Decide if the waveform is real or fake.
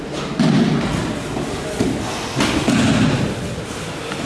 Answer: real